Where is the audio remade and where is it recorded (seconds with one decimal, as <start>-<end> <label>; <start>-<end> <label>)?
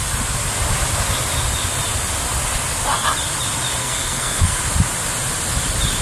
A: 0.0-3.8 recorded; 3.8-4.6 remade; 4.6-6.0 recorded